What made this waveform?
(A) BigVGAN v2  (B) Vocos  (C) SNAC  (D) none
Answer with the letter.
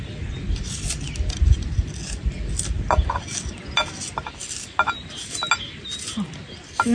D